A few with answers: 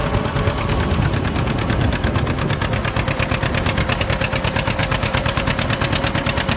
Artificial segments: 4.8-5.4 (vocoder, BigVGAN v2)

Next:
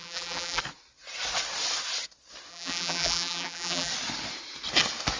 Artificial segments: 0.0-0.6 (vocoder, BigVGAN v2); 2.5-3.9

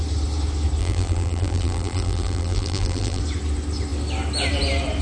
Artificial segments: 0.8-3.2 (vocoder, BigVGAN v2)

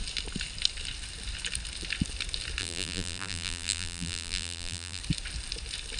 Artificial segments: 2.6-5.0 (vocoder, BigVGAN v2)

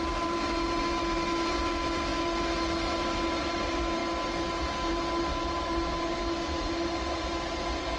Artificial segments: 0.0-4.0 (vocoder, BigVGAN v2); 4.9-8.0

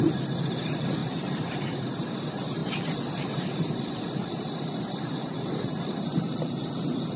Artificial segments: 1.0-1.8 (vocoder, BigVGAN v2); 2.6-7.2

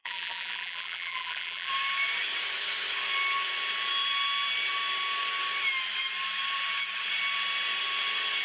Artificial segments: 0.0-1.7 (vocoder, BigVGAN v2)